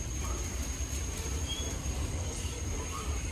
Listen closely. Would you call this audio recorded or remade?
recorded